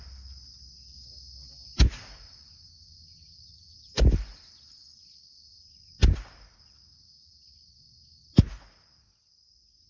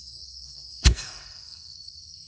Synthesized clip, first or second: second